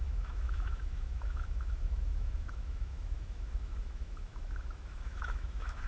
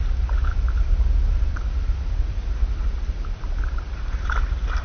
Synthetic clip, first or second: first